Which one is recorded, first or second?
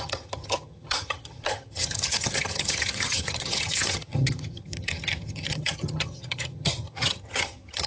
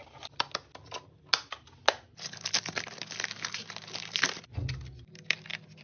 second